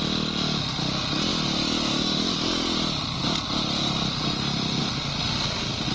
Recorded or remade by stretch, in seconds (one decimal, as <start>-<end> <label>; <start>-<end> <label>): 0.0-5.9 recorded